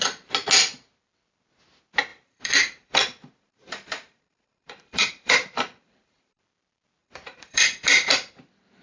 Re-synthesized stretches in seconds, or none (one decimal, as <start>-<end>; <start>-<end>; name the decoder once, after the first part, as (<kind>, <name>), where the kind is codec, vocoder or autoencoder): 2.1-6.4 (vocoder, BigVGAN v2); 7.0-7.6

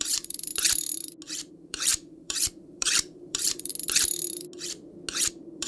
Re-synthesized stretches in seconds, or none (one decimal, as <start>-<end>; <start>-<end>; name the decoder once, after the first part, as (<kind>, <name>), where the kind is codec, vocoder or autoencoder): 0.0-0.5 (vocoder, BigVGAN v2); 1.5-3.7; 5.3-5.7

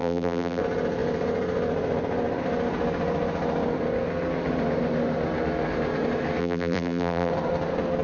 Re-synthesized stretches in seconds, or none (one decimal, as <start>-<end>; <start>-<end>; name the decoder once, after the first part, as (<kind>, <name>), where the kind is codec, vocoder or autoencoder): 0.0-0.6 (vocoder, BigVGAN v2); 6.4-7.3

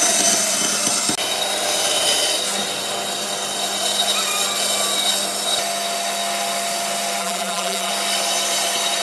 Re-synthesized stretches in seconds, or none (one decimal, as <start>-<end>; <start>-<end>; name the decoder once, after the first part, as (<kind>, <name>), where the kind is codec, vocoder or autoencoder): 7.2-7.9 (vocoder, BigVGAN v2)